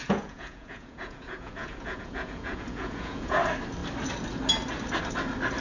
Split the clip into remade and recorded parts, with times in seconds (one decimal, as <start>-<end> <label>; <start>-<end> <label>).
0.0-3.4 remade; 3.4-5.6 recorded